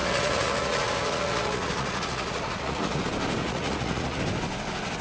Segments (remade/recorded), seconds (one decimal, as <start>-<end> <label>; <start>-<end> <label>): 0.0-3.0 remade; 3.0-3.4 recorded; 3.4-4.2 remade; 4.2-5.0 recorded

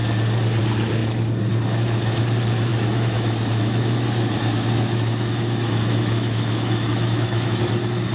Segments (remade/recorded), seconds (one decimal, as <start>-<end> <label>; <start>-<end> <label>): 0.0-2.7 recorded; 2.7-7.6 remade; 7.6-8.1 recorded